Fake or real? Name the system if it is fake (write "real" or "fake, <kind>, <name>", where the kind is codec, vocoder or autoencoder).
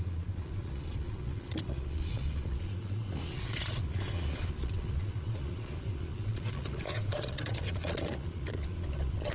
fake, vocoder, Vocos